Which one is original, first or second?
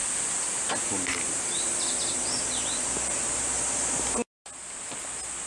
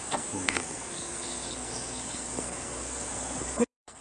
first